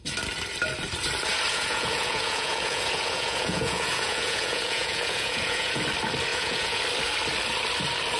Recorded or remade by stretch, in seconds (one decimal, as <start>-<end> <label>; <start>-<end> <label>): 0.0-1.5 recorded; 1.5-5.8 remade; 5.8-6.3 recorded; 6.3-6.8 remade; 6.8-8.2 recorded

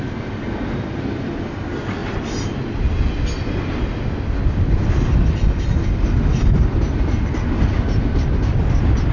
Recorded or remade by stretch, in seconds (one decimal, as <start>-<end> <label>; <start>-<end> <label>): 0.0-9.1 recorded

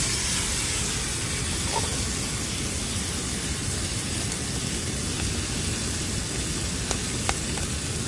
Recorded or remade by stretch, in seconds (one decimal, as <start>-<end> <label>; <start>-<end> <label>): 0.0-8.1 recorded